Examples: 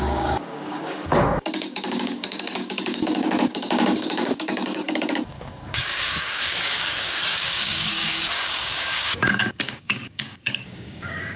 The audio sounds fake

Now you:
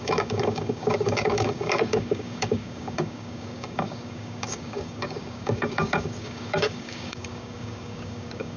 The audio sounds fake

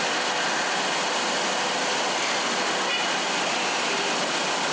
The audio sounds real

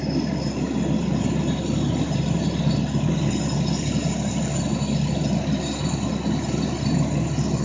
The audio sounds real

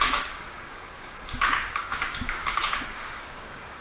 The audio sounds fake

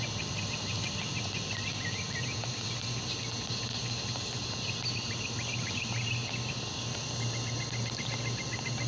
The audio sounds real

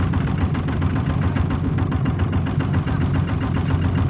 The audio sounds real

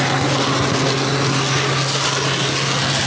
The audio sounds real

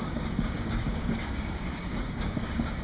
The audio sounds fake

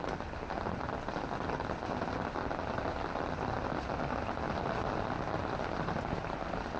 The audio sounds real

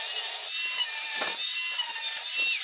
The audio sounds real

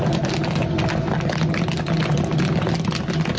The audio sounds real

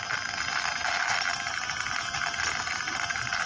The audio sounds real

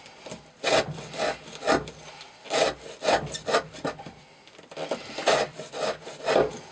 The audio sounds real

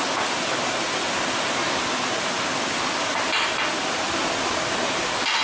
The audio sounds real